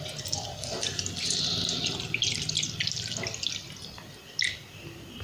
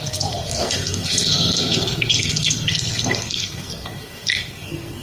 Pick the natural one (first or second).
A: first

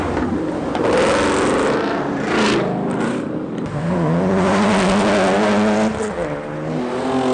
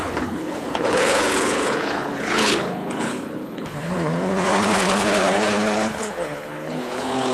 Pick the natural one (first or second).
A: first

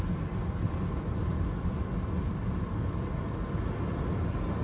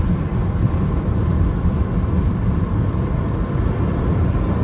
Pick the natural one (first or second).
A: first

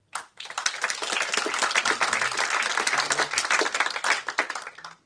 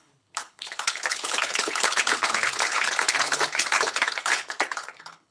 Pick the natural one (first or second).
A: first